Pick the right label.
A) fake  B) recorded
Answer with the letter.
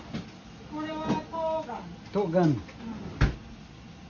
B